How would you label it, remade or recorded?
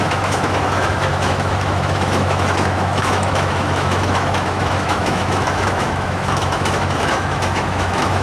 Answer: remade